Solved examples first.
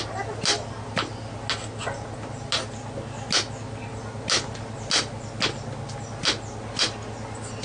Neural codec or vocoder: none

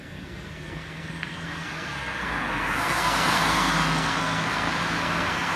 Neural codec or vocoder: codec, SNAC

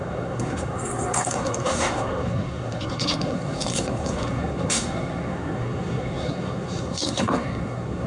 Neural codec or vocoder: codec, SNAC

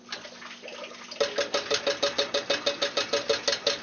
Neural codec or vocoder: none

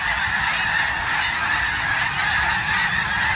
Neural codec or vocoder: none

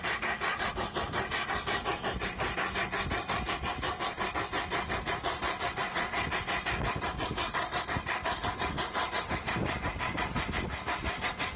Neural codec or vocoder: none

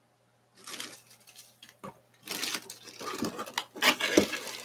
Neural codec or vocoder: none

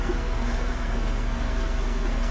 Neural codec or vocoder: codec, SNAC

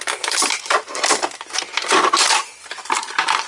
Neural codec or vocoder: none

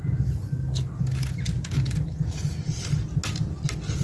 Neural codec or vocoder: none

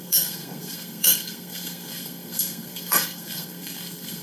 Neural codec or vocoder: codec, SNAC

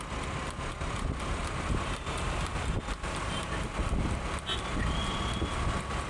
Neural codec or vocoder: none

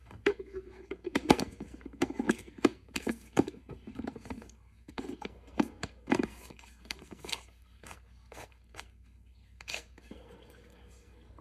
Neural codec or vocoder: codec, SNAC